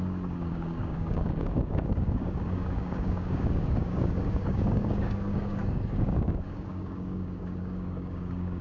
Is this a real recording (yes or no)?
no